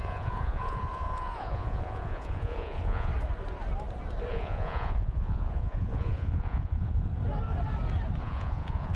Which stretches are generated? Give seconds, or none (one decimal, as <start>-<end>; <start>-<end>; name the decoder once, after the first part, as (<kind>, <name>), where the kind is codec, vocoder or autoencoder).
0.0-3.1 (vocoder, Vocos); 4.3-7.1; 8.2-9.0